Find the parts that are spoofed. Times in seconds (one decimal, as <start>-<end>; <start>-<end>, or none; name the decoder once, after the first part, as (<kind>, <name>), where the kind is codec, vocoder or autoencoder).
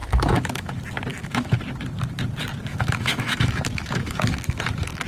0.0-0.7 (autoencoder, DAC-VAE); 1.1-1.6; 2.7-4.6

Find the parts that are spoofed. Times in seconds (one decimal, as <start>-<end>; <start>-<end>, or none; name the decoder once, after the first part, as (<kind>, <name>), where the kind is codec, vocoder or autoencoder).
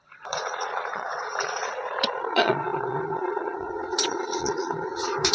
0.0-5.3 (vocoder, Vocos)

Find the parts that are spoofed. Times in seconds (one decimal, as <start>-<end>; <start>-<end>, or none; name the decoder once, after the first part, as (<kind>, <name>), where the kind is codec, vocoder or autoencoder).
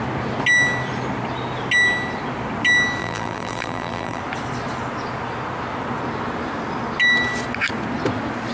3.0-4.2 (vocoder, BigVGAN v2)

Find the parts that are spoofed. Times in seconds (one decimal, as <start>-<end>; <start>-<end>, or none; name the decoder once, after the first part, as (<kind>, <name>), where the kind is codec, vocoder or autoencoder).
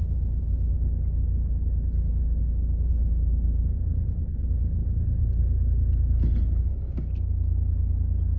2.1-2.9 (codec, DAC)